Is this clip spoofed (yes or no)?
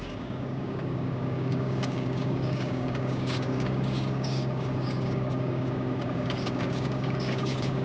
yes